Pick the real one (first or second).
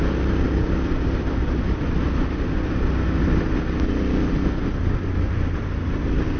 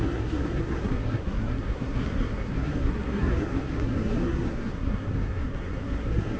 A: first